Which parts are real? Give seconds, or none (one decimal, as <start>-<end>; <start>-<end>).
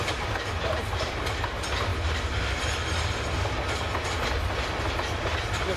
0.0-1.9; 3.4-5.8